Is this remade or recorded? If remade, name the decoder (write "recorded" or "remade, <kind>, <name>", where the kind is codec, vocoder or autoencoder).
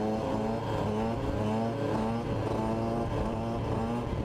recorded